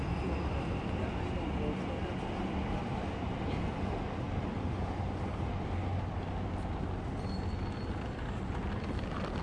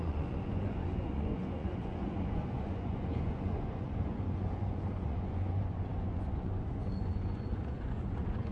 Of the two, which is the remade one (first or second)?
second